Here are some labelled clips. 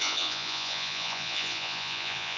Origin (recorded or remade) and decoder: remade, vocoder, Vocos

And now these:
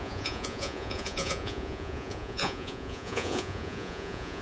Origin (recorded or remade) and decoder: remade, vocoder, Vocos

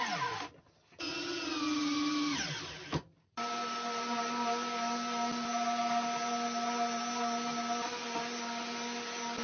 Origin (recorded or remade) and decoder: recorded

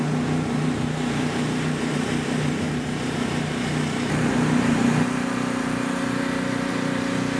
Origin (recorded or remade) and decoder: remade, vocoder, BigVGAN v2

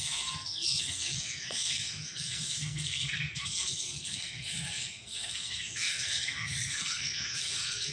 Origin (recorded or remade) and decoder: remade, codec, SNAC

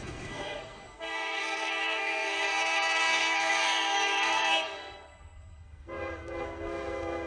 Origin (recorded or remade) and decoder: remade, codec, SNAC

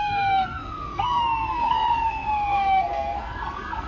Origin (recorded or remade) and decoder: remade, codec, SNAC